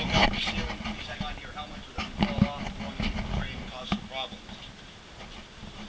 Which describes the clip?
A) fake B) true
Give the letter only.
B